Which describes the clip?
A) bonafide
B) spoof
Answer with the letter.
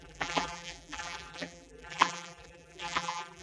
B